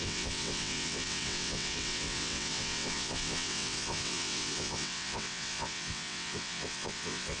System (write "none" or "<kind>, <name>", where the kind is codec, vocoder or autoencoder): vocoder, WaveNeXt